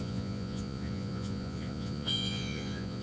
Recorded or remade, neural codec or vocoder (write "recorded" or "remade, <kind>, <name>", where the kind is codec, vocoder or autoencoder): remade, vocoder, Vocos